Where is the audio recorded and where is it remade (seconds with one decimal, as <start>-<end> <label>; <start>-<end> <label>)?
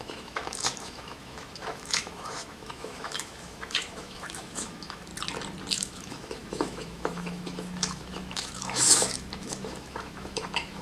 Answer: 0.0-5.1 remade; 5.1-5.7 recorded; 5.7-10.8 remade